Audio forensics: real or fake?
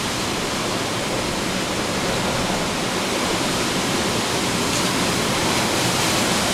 fake